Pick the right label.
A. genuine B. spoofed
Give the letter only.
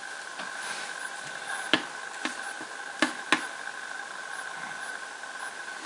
A